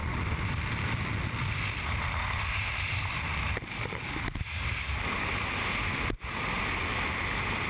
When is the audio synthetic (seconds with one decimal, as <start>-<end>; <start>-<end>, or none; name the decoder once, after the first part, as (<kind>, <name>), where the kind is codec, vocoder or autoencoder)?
none